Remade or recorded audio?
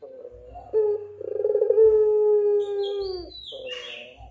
recorded